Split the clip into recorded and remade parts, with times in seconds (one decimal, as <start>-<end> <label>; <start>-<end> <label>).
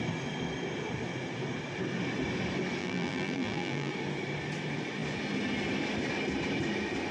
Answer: 0.0-2.8 recorded; 2.8-3.9 remade; 3.9-7.1 recorded